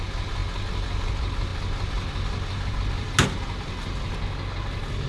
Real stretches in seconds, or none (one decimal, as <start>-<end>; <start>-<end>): 0.0-5.1